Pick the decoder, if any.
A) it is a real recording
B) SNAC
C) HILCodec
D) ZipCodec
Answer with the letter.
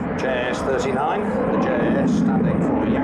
A